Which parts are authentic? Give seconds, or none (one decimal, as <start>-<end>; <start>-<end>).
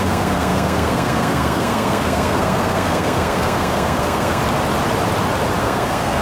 4.4-5.6